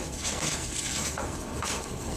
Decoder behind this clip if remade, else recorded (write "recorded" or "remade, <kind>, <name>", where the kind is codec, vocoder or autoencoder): remade, codec, SNAC